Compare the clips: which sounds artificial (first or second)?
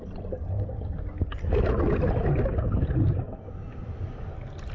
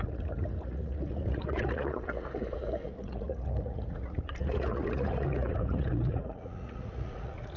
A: second